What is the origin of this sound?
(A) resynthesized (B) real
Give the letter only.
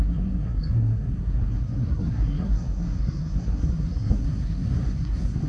A